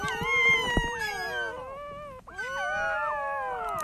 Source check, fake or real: real